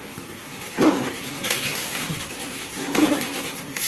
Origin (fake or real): fake